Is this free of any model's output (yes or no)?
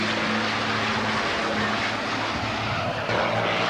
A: yes